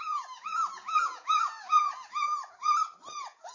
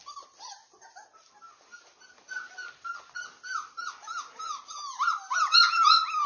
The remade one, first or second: first